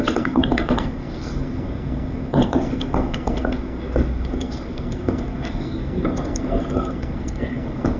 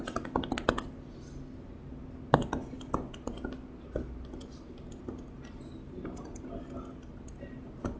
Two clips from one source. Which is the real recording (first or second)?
second